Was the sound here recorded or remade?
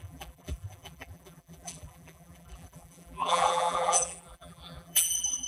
remade